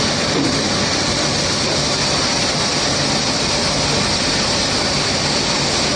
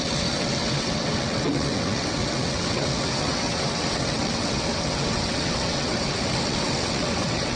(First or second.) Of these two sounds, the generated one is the second